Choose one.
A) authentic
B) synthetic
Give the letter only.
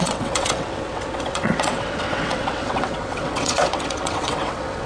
B